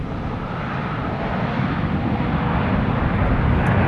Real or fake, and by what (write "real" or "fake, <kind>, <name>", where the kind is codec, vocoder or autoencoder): real